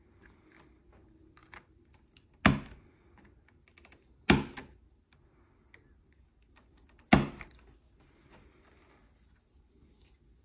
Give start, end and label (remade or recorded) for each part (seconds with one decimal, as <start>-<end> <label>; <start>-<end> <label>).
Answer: 0.0-10.4 recorded